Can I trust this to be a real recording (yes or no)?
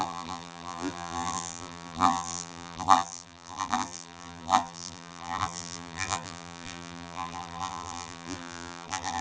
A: no